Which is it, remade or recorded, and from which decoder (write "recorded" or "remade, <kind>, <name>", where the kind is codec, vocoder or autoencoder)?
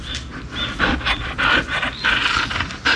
recorded